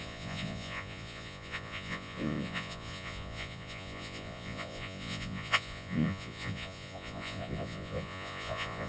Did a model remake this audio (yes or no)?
yes